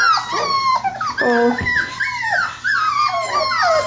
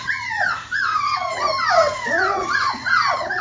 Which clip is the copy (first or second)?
second